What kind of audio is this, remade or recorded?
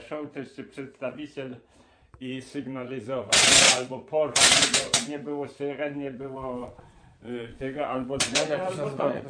remade